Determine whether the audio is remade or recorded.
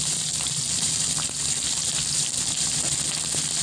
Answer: remade